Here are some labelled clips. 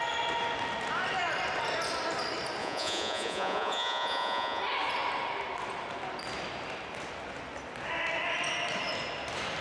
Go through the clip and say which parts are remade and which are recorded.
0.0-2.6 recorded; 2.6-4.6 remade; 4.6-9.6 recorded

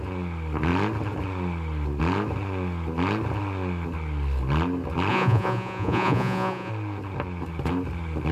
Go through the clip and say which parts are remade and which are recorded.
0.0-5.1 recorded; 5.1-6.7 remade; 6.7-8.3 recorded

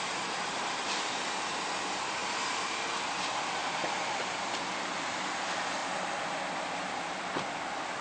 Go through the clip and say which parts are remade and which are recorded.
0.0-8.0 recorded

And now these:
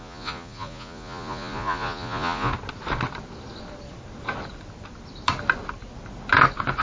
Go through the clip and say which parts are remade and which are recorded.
0.0-2.5 remade; 2.5-6.8 recorded

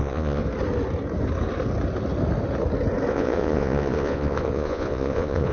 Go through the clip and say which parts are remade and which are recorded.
0.0-0.4 remade; 0.4-3.1 recorded; 3.1-5.5 remade

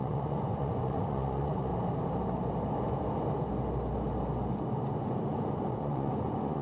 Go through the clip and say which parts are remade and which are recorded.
0.0-1.7 remade; 1.7-5.7 recorded; 5.7-6.6 remade

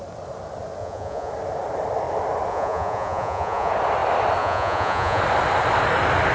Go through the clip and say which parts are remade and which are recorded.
0.0-0.8 recorded; 0.8-1.3 remade; 1.3-2.5 recorded; 2.5-3.7 remade; 3.7-4.4 recorded; 4.4-5.2 remade; 5.2-6.3 recorded

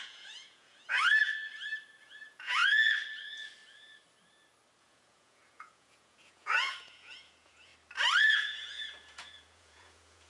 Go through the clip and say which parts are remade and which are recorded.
0.0-1.2 remade; 1.2-2.0 recorded; 2.0-2.6 remade; 2.6-4.8 recorded; 4.8-7.7 remade; 7.7-8.2 recorded; 8.2-10.3 remade